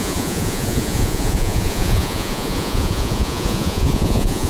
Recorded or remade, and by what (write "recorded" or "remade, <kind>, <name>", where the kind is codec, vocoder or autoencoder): remade, vocoder, Vocos